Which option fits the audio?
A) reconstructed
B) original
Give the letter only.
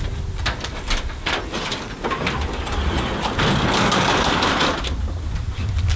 B